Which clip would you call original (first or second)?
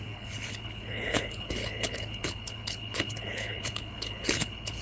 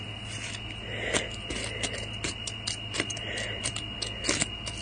second